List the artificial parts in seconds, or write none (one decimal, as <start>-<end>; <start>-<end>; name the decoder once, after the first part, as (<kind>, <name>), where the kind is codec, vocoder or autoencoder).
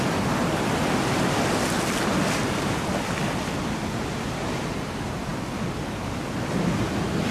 none